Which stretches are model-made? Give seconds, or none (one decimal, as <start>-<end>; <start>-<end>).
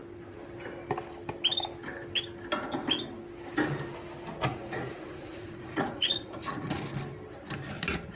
4.5-6.8